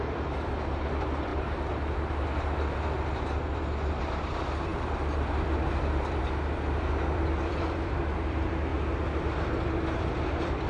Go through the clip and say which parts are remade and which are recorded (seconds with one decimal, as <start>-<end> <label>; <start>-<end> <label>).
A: 0.0-1.3 remade; 1.3-4.0 recorded; 4.0-8.7 remade; 8.7-9.2 recorded; 9.2-10.7 remade